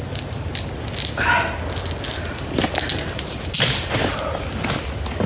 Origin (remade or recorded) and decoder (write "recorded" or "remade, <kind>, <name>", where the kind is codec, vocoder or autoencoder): recorded